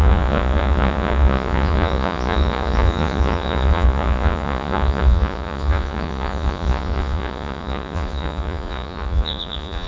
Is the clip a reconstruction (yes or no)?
yes